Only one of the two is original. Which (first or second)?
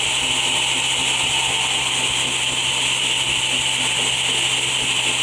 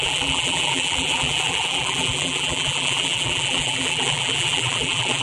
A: first